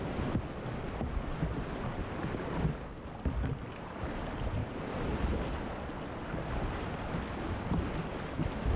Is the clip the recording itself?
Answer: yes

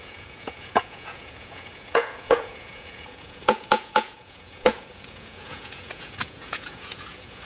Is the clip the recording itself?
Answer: no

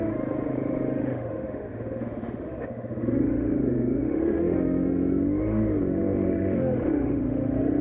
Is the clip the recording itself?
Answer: no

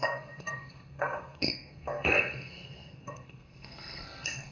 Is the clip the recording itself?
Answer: no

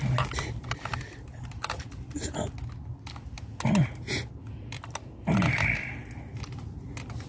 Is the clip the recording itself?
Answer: yes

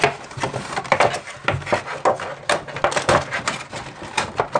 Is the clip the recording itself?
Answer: yes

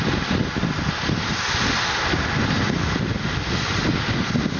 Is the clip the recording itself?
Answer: yes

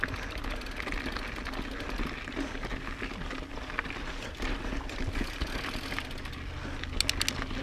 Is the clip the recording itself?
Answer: yes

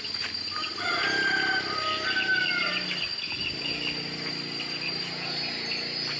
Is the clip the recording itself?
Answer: yes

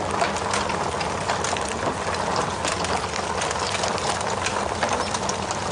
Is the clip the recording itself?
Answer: yes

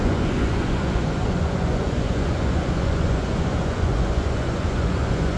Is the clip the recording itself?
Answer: no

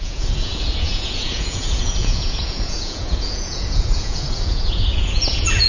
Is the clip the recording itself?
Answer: no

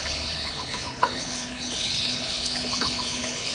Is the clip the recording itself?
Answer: no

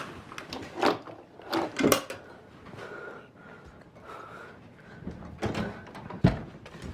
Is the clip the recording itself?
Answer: yes